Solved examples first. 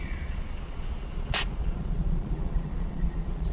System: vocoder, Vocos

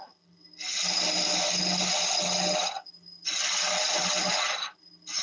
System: none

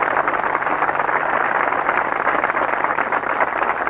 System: none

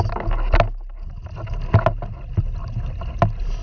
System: none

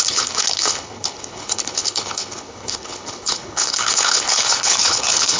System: codec, HILCodec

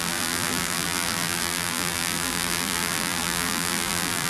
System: vocoder, BigVGAN v2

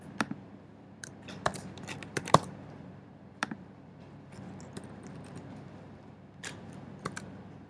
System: vocoder, BigVGAN v2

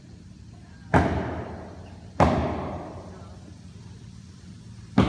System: none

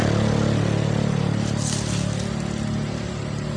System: none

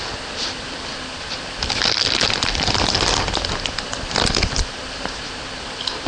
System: none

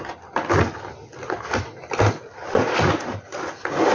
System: none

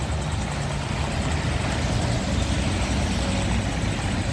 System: none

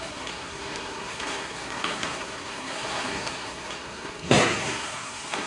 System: codec, SNAC